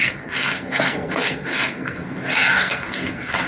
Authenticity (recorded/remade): remade